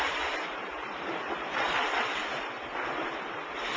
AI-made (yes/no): yes